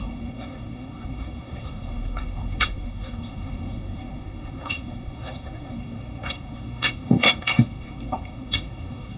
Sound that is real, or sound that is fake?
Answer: fake